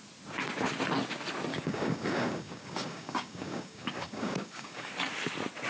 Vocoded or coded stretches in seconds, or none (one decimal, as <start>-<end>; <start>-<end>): 1.5-4.9